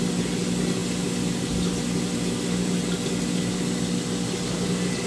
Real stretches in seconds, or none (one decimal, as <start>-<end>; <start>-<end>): 0.0-5.1